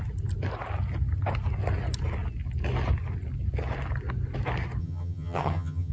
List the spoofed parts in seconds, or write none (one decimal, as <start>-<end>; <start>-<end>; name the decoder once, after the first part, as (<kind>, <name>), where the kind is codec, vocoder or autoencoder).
4.8-5.9 (vocoder, HiFi-GAN)